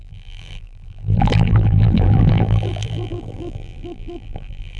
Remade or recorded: remade